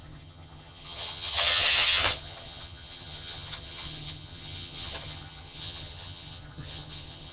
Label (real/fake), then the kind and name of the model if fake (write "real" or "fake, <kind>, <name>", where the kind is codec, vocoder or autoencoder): fake, vocoder, HiFi-GAN